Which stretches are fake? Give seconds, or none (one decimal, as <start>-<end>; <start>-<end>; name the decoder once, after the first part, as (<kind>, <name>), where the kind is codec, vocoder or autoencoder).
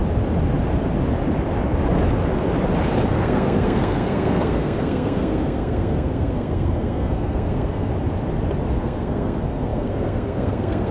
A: 3.1-7.9 (codec, SNAC); 8.7-10.9